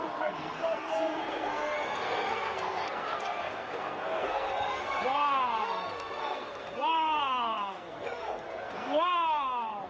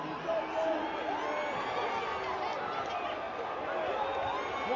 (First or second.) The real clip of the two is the second